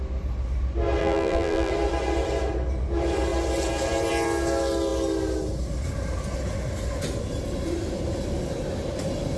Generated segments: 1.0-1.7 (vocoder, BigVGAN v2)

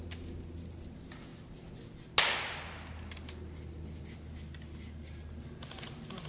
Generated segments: none